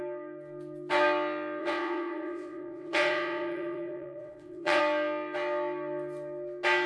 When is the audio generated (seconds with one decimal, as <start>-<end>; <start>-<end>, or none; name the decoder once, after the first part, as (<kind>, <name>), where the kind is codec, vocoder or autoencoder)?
1.6-4.8 (vocoder, WaveNeXt)